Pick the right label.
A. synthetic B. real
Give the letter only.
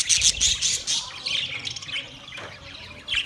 B